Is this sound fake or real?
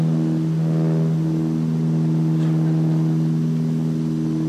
real